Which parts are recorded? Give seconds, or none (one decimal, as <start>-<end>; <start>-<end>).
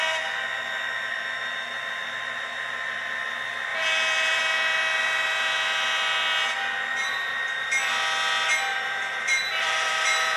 0.0-3.7; 4.4-6.9; 7.7-8.7